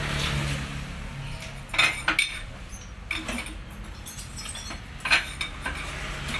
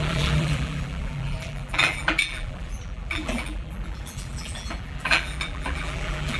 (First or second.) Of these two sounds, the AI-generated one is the second